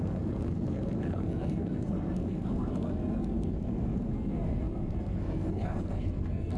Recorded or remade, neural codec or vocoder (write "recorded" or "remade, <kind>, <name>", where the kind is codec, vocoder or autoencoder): remade, codec, SNAC